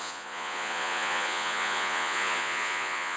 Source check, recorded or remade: remade